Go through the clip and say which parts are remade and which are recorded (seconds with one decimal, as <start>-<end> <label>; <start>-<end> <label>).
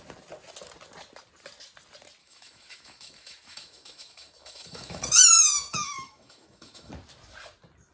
0.0-2.2 recorded; 2.2-6.9 remade; 6.9-7.9 recorded